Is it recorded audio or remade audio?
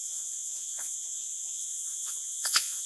remade